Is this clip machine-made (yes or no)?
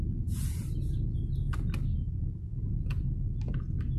no